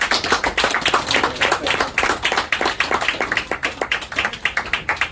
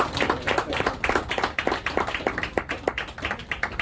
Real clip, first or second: first